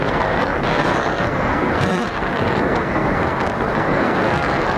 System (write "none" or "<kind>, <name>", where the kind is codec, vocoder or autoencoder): codec, SNAC